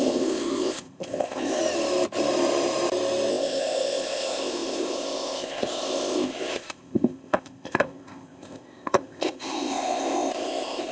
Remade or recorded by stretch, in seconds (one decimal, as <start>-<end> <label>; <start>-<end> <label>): 0.0-1.6 remade; 1.6-3.3 recorded; 3.3-10.9 remade